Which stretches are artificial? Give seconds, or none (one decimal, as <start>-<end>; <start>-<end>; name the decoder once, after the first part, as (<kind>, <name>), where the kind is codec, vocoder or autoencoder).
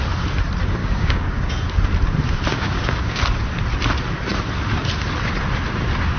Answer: 0.8-1.4 (codec, DAC); 2.5-3.2